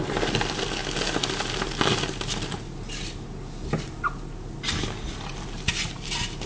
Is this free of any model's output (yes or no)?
yes